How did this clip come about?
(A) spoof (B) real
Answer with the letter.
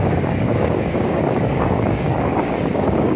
A